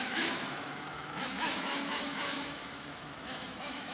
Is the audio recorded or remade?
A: remade